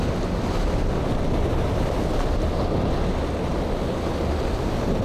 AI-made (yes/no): no